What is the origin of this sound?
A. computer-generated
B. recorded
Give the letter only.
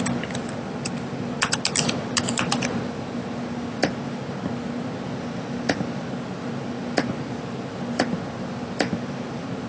B